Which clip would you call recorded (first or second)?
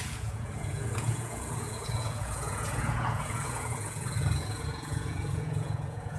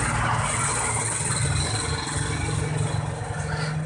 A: second